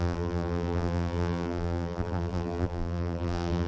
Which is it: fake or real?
fake